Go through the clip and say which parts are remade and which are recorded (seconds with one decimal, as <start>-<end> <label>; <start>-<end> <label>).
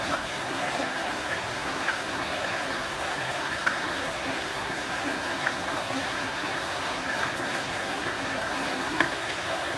0.0-9.8 remade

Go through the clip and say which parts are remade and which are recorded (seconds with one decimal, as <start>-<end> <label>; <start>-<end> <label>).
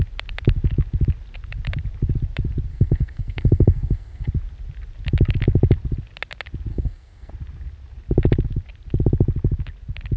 0.0-2.7 recorded; 2.7-4.3 remade; 4.3-6.7 recorded; 6.7-7.3 remade; 7.3-10.2 recorded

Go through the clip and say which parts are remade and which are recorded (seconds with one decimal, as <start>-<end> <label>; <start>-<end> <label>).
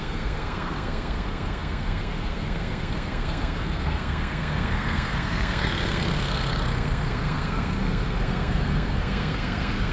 0.0-9.9 remade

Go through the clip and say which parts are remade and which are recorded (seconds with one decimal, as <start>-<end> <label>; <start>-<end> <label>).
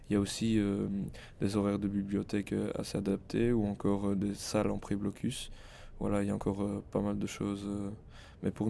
0.0-8.7 recorded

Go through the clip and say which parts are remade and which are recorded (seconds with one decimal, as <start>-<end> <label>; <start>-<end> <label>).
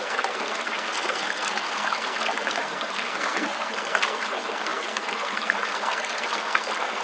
0.0-7.0 remade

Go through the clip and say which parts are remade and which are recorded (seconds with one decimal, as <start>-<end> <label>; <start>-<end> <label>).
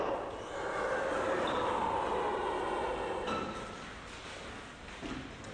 0.0-5.5 recorded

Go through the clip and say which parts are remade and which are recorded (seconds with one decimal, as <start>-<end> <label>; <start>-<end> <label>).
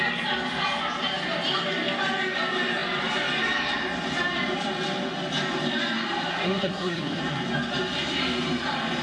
0.0-6.3 recorded; 6.3-7.2 remade; 7.2-9.0 recorded